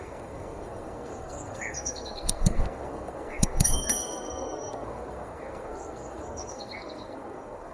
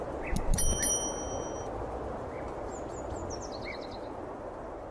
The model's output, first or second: first